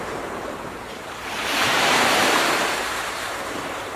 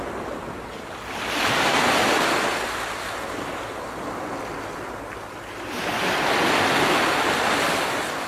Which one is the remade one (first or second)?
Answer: first